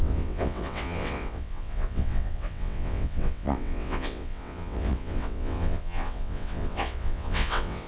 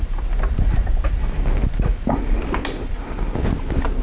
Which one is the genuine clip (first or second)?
second